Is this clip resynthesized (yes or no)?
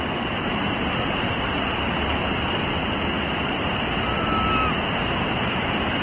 no